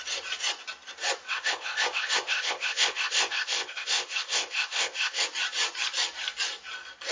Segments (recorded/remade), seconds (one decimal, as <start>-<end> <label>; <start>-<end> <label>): 0.0-1.3 recorded; 1.3-5.2 remade; 5.2-7.1 recorded